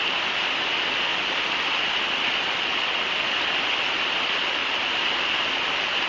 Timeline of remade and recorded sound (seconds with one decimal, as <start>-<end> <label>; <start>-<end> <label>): 0.0-6.1 recorded